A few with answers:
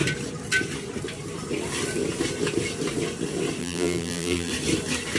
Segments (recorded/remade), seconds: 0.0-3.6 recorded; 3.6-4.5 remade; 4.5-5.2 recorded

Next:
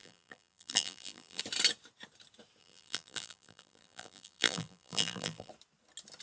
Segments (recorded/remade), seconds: 0.0-1.4 remade; 1.4-2.6 recorded; 2.6-5.5 remade; 5.5-6.2 recorded

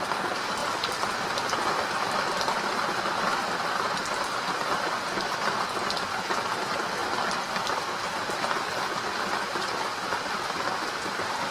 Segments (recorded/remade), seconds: 0.0-11.5 recorded

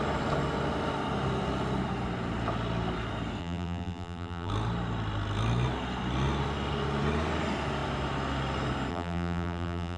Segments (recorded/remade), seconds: 0.0-3.4 recorded; 3.4-4.5 remade; 4.5-8.9 recorded; 8.9-10.0 remade

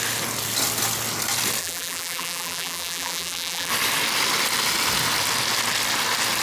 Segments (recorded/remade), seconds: 0.0-1.6 recorded; 1.6-3.7 remade; 3.7-6.4 recorded

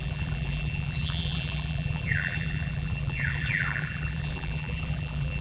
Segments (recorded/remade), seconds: 0.0-5.4 remade